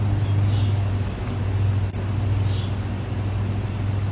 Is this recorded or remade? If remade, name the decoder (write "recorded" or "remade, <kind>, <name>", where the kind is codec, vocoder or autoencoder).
recorded